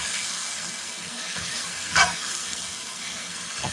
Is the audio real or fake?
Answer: fake